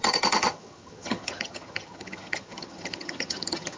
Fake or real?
fake